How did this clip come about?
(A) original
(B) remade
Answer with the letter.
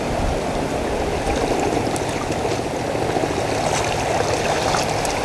A